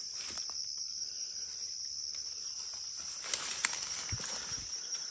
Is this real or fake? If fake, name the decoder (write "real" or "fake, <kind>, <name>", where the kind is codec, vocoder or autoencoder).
real